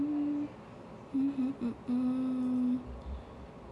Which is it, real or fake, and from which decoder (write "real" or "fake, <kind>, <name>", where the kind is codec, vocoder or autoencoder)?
real